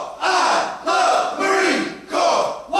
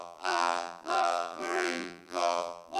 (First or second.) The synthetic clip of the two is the second